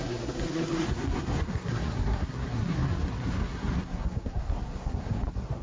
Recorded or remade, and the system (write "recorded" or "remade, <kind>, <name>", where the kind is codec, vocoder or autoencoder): remade, codec, SNAC